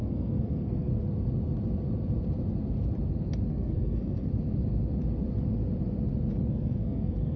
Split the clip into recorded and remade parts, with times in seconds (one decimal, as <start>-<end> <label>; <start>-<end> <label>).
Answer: 0.0-0.9 remade; 0.9-3.5 recorded; 3.5-4.3 remade; 4.3-6.5 recorded; 6.5-7.4 remade